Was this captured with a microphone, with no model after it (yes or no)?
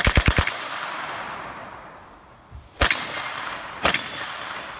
no